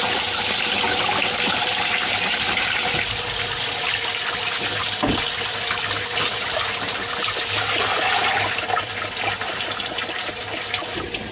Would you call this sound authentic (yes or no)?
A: yes